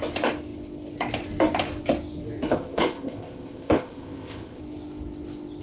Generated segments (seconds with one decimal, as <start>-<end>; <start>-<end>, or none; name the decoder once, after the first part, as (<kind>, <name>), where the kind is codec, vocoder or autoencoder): 2.5-4.6 (codec, ZipCodec)